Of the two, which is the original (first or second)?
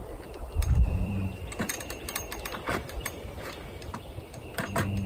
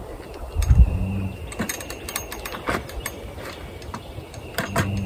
second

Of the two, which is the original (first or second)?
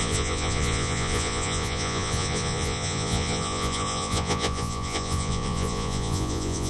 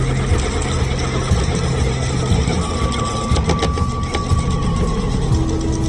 second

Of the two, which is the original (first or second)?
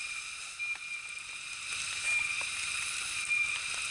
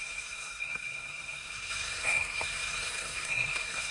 first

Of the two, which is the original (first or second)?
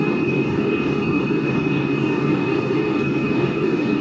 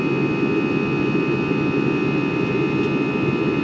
second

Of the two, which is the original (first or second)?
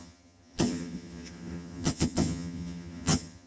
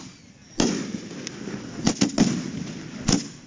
second